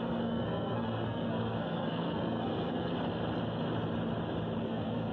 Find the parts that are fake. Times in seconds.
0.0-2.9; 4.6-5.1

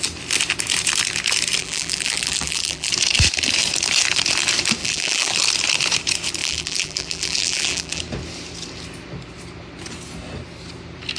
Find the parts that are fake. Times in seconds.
1.6-2.9; 4.8-5.3; 6.4-8.0

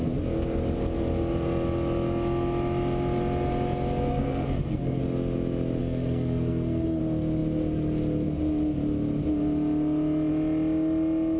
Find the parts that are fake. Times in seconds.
4.1-5.0; 5.8-7.0

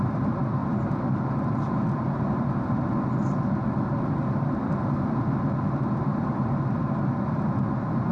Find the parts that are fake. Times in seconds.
none

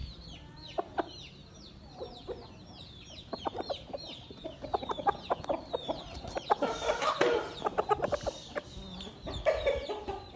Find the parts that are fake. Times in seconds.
none